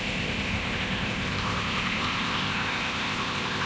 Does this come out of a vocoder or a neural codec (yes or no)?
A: yes